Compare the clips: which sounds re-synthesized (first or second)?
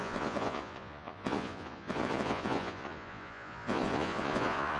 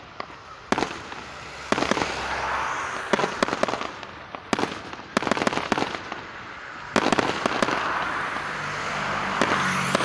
first